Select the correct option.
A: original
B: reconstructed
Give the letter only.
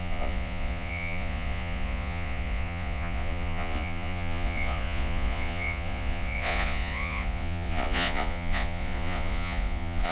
B